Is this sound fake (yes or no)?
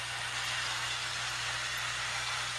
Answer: no